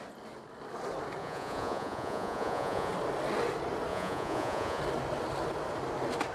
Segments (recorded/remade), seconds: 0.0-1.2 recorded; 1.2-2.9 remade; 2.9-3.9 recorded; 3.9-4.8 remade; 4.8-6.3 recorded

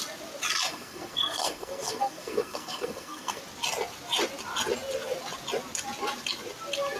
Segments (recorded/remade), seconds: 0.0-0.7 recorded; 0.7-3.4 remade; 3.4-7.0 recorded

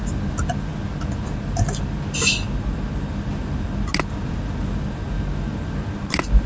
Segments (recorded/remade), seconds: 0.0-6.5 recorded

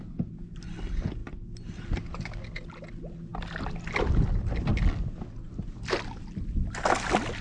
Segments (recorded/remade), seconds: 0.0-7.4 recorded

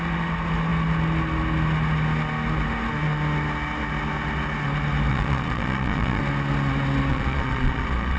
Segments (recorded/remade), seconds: 0.0-5.1 recorded; 5.1-6.2 remade; 6.2-7.1 recorded; 7.1-8.2 remade

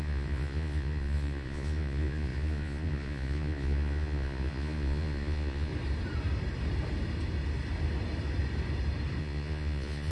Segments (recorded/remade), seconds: 0.0-5.7 remade; 5.7-9.2 recorded; 9.2-10.1 remade

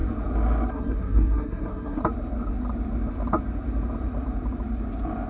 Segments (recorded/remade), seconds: 0.0-0.7 recorded; 0.7-2.0 remade; 2.0-5.3 recorded